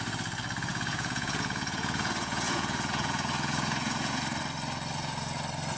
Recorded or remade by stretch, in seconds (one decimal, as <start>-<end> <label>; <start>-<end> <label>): 0.0-0.7 recorded; 0.7-4.2 remade; 4.2-5.8 recorded